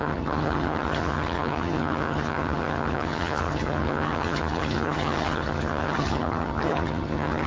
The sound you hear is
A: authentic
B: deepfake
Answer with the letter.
B